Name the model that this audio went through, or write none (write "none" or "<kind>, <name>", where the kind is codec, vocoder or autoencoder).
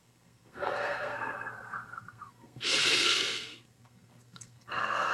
codec, SNAC